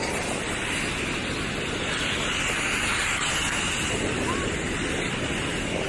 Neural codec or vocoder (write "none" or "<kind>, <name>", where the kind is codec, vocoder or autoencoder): none